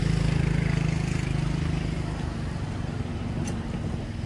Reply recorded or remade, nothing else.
recorded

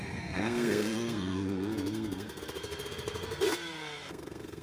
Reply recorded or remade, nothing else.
remade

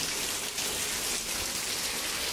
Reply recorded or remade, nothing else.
recorded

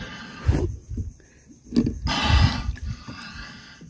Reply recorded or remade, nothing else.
recorded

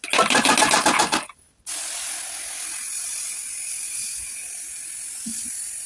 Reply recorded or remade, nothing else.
recorded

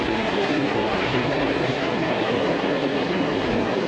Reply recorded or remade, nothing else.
remade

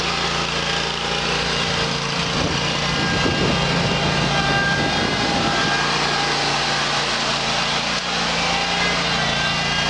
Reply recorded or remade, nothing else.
recorded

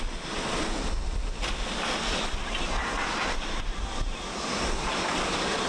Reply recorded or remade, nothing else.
recorded